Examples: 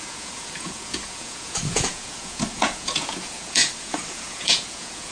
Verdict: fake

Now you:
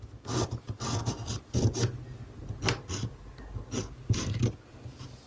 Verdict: real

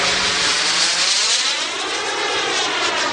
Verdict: real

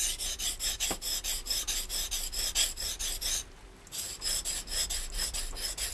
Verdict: real